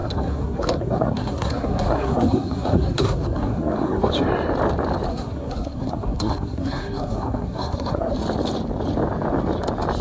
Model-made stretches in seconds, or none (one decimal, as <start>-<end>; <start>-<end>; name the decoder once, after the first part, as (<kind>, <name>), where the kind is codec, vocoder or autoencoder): 0.0-4.1 (codec, SNAC); 5.1-8.1